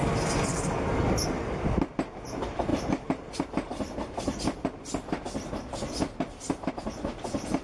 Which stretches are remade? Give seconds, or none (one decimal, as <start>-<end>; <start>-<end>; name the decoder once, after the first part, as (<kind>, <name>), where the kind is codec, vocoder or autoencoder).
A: none